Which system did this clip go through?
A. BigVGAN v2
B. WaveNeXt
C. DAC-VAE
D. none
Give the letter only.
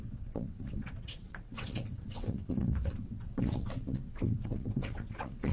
B